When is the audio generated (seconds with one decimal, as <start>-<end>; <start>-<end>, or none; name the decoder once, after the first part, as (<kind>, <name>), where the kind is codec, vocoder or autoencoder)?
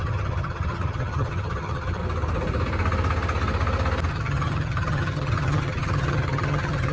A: 0.0-2.0 (vocoder, HiFi-GAN); 4.1-6.9